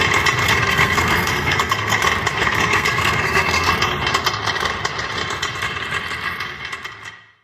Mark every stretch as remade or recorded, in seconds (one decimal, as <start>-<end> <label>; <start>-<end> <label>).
0.0-0.4 recorded; 0.4-2.0 remade; 2.0-2.4 recorded; 2.4-3.7 remade; 3.7-7.4 recorded